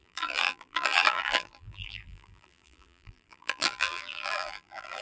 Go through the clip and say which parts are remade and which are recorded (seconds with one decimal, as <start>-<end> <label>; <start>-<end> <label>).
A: 0.0-5.0 remade

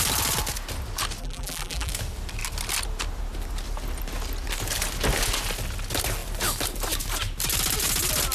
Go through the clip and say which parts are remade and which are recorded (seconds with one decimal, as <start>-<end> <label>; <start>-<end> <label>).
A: 0.0-1.2 recorded; 1.2-1.9 remade; 1.9-8.3 recorded

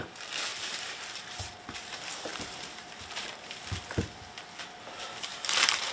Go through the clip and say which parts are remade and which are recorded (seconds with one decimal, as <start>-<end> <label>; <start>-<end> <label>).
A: 0.0-0.5 recorded; 0.5-1.5 remade; 1.5-2.3 recorded; 2.3-3.5 remade; 3.5-5.3 recorded; 5.3-5.9 remade